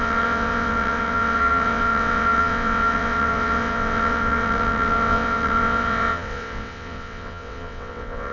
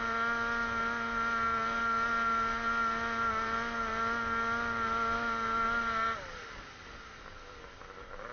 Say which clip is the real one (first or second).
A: second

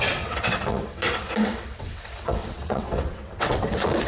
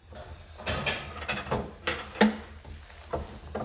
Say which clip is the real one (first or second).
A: second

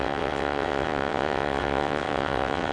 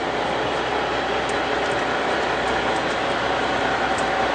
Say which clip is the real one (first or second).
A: second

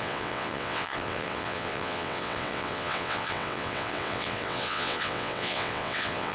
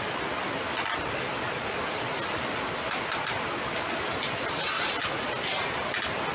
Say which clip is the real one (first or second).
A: second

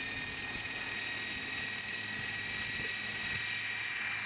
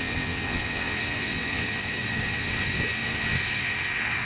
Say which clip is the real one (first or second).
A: first